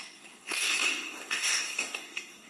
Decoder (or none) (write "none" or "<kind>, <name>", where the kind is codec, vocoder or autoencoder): codec, SNAC